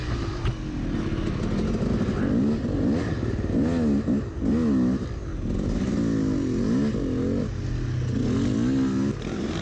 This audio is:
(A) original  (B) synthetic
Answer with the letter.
A